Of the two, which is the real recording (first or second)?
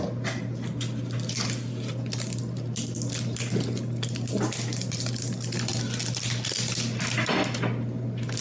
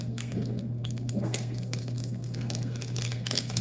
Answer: first